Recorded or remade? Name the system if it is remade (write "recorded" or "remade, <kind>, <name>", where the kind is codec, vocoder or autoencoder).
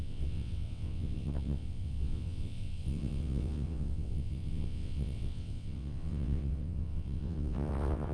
remade, vocoder, WaveNeXt